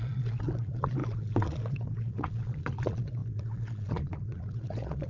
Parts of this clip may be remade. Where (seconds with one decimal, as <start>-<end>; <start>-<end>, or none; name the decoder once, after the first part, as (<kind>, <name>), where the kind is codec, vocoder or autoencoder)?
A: 0.0-5.1 (vocoder, Vocos)